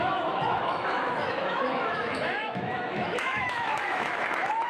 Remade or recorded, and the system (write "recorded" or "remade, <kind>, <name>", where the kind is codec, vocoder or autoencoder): remade, autoencoder, DAC-VAE